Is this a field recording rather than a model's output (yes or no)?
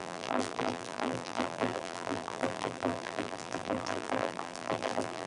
no